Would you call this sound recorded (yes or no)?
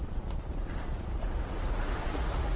no